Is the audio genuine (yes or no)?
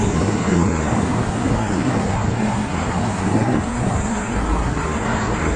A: no